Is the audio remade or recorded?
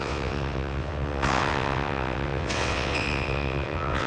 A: remade